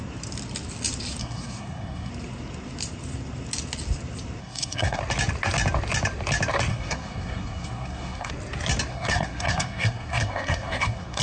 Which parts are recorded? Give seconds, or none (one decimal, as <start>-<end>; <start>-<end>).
0.0-1.2; 2.1-4.4; 5.0-6.7; 8.3-8.9